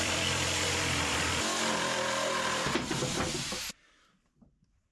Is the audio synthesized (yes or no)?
yes